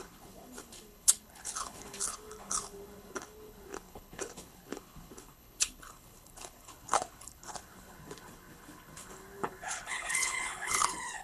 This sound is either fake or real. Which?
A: fake